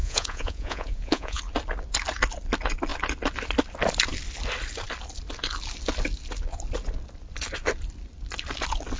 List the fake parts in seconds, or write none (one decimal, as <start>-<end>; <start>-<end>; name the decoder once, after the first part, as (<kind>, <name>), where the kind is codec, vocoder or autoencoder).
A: 0.0-1.4 (vocoder, Vocos)